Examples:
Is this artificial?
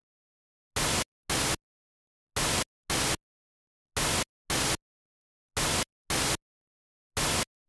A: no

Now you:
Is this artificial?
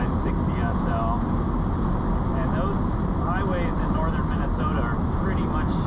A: no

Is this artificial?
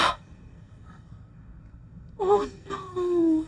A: yes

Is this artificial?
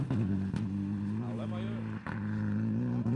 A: no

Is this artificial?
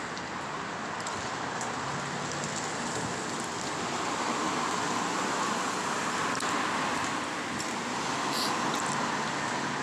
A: no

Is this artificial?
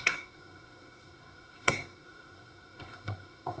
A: yes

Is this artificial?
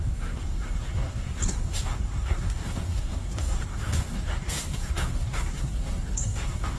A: yes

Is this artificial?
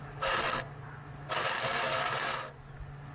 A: no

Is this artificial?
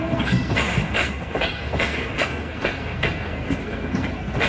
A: yes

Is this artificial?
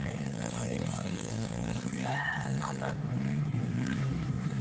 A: yes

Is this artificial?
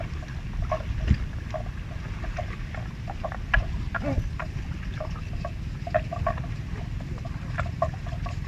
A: no